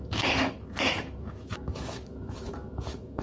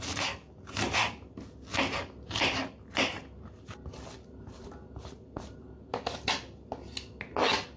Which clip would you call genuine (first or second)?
second